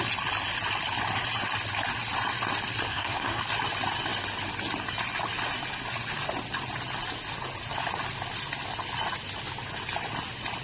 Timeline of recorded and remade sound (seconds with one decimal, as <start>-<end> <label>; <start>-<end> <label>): 0.0-2.9 recorded; 2.9-3.4 remade; 3.4-10.6 recorded